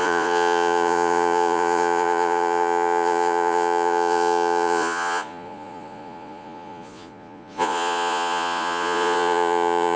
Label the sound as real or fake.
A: fake